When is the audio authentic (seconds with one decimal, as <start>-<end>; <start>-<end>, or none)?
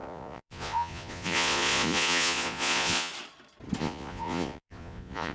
3.1-3.8